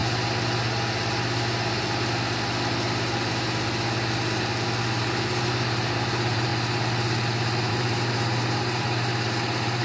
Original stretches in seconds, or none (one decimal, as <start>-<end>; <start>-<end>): 0.0-5.0; 6.5-7.7